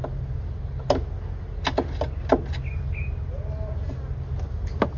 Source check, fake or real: real